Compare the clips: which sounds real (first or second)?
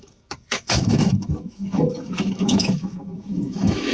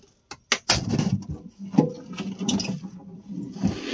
second